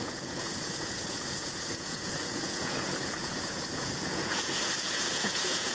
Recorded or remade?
remade